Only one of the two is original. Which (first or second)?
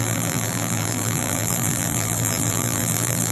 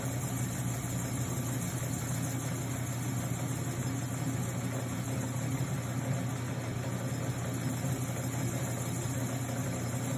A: second